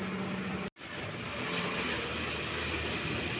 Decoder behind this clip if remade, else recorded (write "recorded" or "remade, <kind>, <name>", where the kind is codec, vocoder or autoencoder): recorded